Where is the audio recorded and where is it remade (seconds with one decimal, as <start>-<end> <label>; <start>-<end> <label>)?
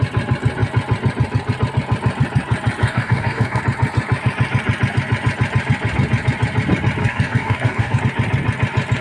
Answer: 0.0-2.8 recorded; 2.8-3.6 remade; 3.6-7.0 recorded; 7.0-8.0 remade; 8.0-9.0 recorded